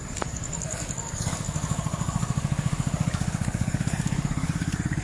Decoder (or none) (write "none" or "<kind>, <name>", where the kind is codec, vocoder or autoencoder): codec, DAC